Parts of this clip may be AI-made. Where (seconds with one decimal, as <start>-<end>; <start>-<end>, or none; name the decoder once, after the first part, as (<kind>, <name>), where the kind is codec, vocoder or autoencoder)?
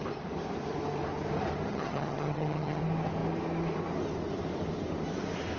1.7-2.8 (vocoder, HiFi-GAN)